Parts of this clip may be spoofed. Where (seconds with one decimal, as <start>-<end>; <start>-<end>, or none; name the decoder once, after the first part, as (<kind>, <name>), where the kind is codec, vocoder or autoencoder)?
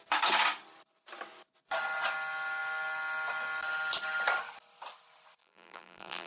5.4-6.3 (vocoder, BigVGAN v2)